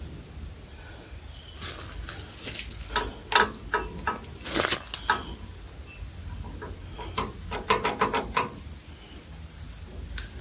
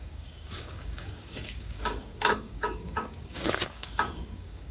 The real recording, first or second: first